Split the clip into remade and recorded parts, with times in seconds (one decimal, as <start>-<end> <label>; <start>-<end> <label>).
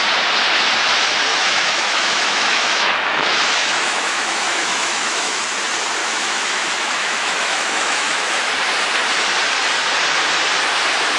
0.0-1.3 recorded; 1.3-5.4 remade; 5.4-6.0 recorded; 6.0-8.5 remade; 8.5-11.2 recorded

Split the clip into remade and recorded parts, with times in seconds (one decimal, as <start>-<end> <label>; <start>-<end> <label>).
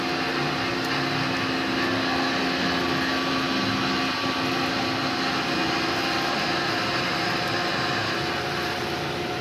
0.0-9.4 recorded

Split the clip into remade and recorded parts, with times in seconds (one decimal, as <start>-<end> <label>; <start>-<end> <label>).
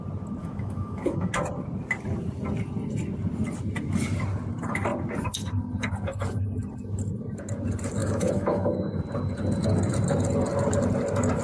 0.0-0.4 recorded; 0.4-1.3 remade; 1.3-8.0 recorded; 8.0-9.0 remade; 9.0-11.4 recorded